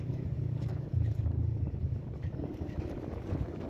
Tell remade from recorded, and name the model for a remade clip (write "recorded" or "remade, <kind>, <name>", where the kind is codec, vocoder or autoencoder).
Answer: remade, codec, DAC